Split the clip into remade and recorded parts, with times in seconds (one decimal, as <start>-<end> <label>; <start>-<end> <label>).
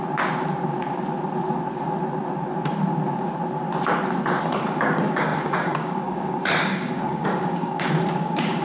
0.0-4.4 recorded; 4.4-8.6 remade